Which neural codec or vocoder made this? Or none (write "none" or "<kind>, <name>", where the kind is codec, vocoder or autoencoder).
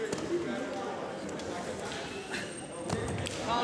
none